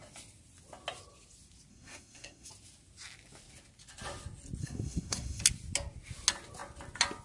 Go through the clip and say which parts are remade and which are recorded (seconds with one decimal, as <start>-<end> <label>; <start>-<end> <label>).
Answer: 0.0-1.7 recorded; 1.7-2.5 remade; 2.5-4.6 recorded; 4.6-5.4 remade; 5.4-7.2 recorded